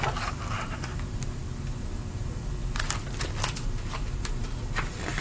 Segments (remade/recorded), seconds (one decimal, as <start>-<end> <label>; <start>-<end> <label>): 0.0-5.2 recorded